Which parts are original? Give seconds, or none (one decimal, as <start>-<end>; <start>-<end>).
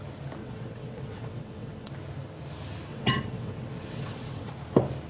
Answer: 0.0-0.4; 1.9-2.9; 4.5-5.1